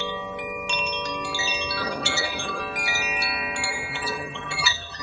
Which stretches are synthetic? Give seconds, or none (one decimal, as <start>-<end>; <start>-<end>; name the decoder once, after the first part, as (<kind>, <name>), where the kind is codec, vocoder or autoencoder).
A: 1.8-2.6 (vocoder, HiFi-GAN); 3.7-5.0